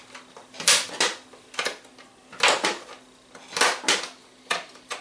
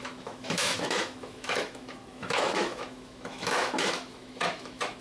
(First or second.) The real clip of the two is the first